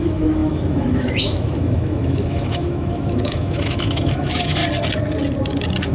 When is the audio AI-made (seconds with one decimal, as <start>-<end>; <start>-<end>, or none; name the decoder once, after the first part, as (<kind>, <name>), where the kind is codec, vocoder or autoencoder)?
0.0-4.6 (autoencoder, DAC-VAE)